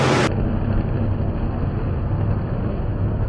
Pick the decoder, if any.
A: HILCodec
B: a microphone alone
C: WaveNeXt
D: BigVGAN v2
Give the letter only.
B